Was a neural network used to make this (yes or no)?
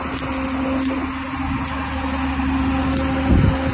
no